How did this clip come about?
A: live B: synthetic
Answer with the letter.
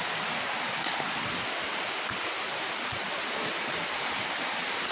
A